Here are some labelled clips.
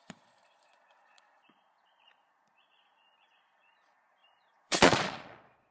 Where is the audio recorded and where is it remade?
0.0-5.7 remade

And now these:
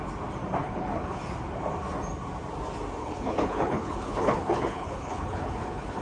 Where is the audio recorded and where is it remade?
0.0-0.6 recorded; 0.6-1.2 remade; 1.2-3.0 recorded; 3.0-6.0 remade

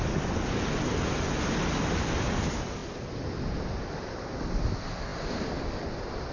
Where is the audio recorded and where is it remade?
0.0-6.3 recorded

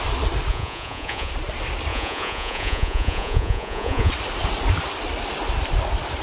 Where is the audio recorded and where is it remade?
0.0-0.5 recorded; 0.5-1.3 remade; 1.3-1.9 recorded; 1.9-4.1 remade; 4.1-6.2 recorded